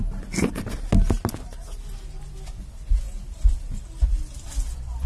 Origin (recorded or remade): recorded